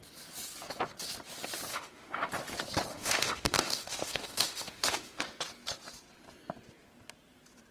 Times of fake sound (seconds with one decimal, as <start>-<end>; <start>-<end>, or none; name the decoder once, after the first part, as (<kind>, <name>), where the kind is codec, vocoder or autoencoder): 1.7-2.3 (autoencoder, DAC-VAE); 2.9-5.2